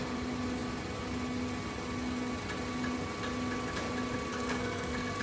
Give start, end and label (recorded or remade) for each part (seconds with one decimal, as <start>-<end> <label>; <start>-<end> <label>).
0.0-4.3 recorded; 4.3-5.2 remade